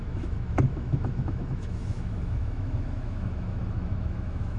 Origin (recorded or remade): remade